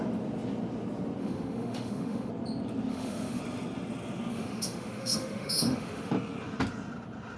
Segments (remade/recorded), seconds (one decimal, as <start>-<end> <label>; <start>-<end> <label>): 0.0-1.2 recorded; 1.2-2.3 remade; 2.3-2.9 recorded; 2.9-3.4 remade; 3.4-4.3 recorded; 4.3-6.1 remade; 6.1-7.4 recorded